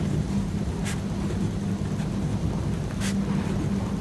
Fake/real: real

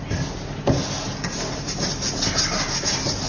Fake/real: real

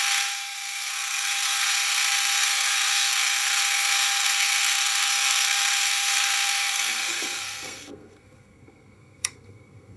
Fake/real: fake